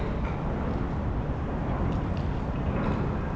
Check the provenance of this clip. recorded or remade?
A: recorded